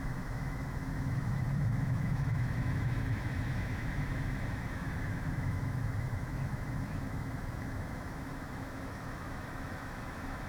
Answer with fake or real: fake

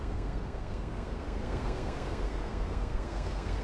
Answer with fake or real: fake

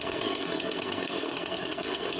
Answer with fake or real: fake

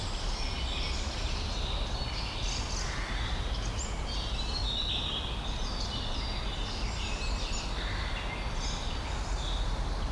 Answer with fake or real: real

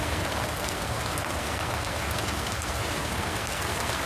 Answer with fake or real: fake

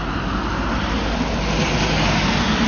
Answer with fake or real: real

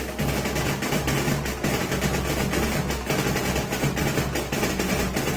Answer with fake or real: real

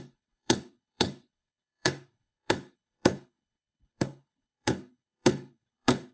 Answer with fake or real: fake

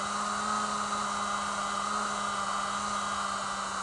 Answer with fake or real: real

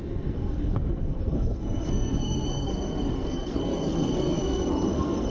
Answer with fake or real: fake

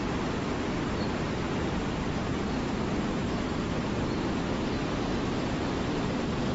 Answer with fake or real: fake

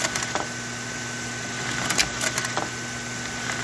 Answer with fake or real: real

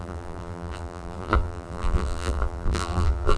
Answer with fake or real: fake